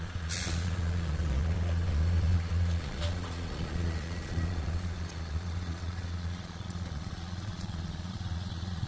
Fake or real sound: fake